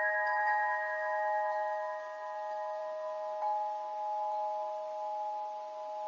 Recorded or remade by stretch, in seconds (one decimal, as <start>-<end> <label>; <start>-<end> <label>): 0.0-2.8 remade; 2.8-6.1 recorded